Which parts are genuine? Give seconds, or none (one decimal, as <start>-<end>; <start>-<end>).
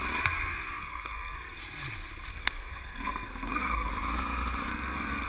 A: 0.0-0.8; 1.6-2.3; 3.9-4.7